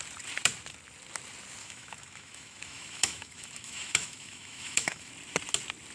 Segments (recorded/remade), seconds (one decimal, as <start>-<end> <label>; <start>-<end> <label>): 0.0-1.6 recorded; 1.6-5.1 remade; 5.1-5.9 recorded